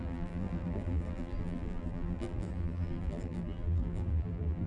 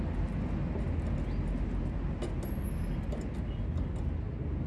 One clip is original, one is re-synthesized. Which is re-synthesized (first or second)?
first